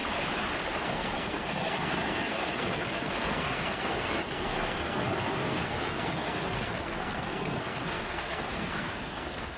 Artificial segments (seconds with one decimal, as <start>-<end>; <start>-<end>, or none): 0.8-9.6